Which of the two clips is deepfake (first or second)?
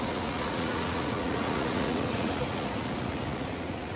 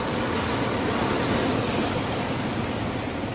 first